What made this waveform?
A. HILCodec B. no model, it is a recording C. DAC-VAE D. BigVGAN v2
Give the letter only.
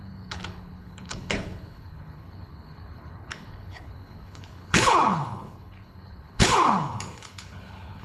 A